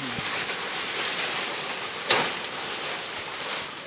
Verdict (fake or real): real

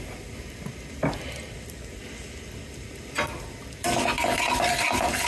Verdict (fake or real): real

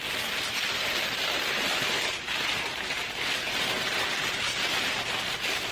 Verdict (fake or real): fake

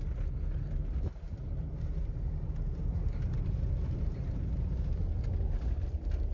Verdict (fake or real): real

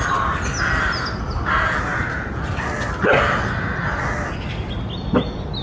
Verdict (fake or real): real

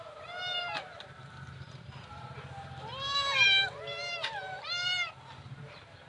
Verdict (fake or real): fake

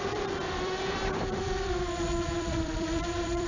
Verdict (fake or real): fake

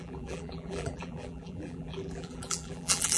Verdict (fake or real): fake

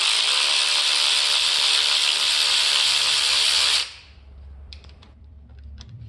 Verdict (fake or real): fake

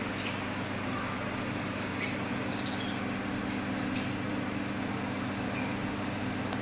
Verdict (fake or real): real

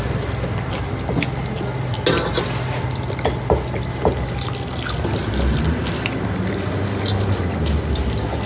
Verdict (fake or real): real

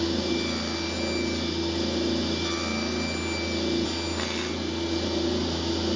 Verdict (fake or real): real